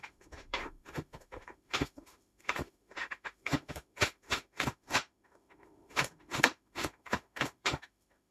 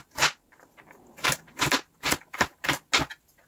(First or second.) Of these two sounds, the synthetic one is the first